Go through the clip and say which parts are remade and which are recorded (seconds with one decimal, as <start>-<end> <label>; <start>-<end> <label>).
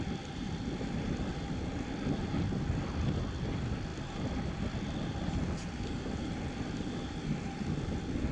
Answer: 0.0-8.3 recorded